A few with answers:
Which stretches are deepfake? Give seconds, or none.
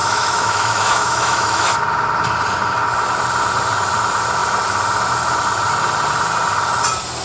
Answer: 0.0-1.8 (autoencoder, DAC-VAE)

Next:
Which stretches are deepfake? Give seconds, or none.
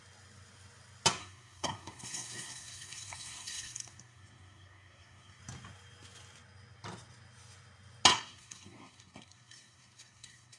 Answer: 1.2-5.4 (codec, SNAC); 8.1-10.6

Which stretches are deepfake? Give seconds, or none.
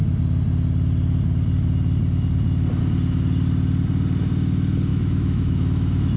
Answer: 4.9-6.2 (autoencoder, DAC-VAE)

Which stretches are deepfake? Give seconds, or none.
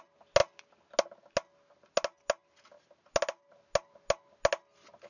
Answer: none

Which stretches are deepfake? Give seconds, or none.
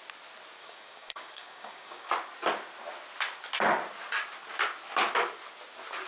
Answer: 0.6-2.1 (codec, DAC)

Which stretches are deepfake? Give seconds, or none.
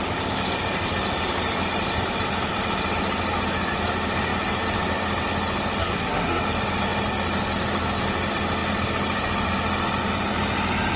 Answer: 5.8-6.4 (codec, SNAC)